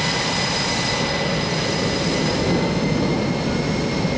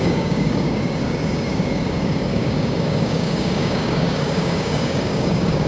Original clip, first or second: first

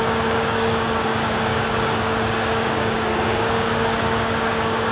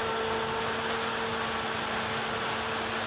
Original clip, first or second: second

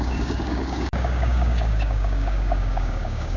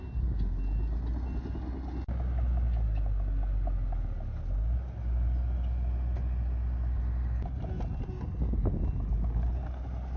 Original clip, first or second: second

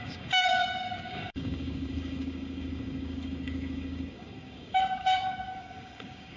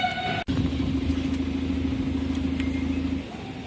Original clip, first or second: second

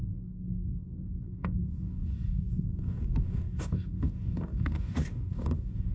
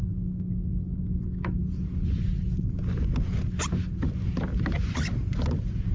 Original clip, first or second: second